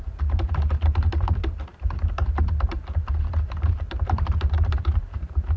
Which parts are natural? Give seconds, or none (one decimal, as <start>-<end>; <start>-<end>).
1.7-2.7